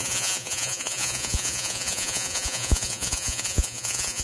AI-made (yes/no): yes